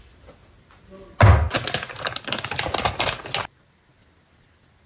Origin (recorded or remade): recorded